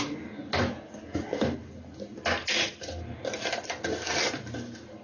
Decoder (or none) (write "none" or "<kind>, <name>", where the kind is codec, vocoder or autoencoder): none